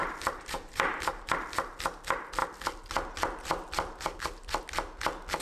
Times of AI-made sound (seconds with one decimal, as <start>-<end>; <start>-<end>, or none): 0.0-1.3